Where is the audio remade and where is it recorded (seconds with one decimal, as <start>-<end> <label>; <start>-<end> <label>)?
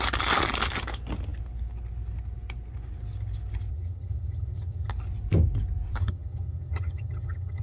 0.0-3.7 recorded; 3.7-4.9 remade; 4.9-6.0 recorded; 6.0-7.6 remade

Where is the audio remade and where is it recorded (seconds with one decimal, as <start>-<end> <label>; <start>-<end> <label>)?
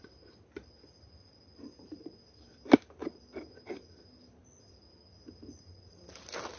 0.0-6.6 recorded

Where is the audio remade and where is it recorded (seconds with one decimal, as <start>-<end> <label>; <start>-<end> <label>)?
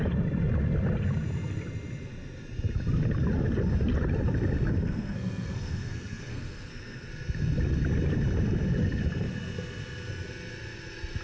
0.0-4.7 recorded; 4.7-7.1 remade; 7.1-11.2 recorded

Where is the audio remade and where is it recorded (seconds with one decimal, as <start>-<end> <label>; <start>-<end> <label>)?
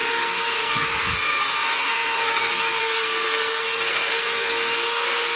0.0-5.4 remade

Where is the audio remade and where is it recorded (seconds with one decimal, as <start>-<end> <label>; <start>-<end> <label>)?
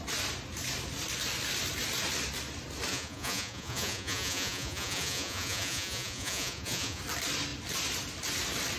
0.0-2.9 recorded; 2.9-7.0 remade; 7.0-8.8 recorded